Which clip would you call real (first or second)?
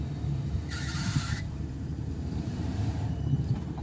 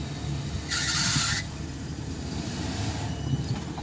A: second